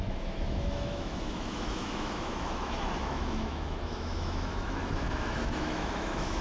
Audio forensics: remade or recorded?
remade